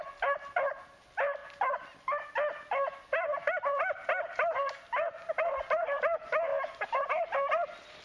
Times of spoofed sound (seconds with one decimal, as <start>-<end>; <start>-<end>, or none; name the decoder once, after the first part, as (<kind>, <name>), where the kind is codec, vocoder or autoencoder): none